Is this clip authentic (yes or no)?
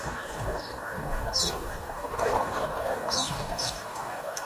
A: no